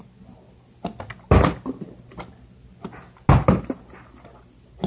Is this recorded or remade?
recorded